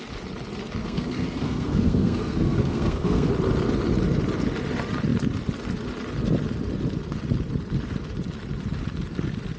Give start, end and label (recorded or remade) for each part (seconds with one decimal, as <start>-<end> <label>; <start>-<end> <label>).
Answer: 0.0-0.8 recorded; 0.8-3.3 remade; 3.3-9.6 recorded

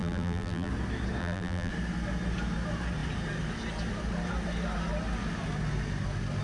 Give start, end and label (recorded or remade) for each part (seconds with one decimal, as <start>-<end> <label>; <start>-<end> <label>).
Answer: 0.0-0.7 remade; 0.7-1.2 recorded; 1.2-1.7 remade; 1.7-6.4 recorded